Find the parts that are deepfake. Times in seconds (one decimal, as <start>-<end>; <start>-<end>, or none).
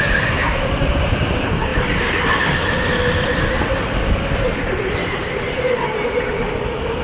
none